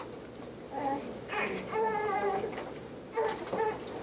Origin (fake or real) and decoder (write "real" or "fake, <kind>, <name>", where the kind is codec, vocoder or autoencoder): real